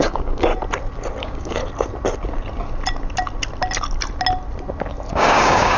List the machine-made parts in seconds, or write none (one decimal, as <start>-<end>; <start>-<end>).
0.0-0.5; 1.2-1.6; 5.1-5.8